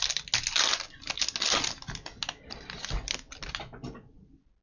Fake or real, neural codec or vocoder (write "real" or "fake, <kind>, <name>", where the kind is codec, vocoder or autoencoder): real